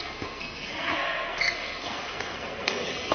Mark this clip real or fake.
fake